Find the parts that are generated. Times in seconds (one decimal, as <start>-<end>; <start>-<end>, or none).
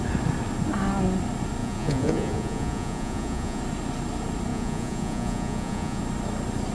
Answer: 1.6-3.6; 4.5-6.0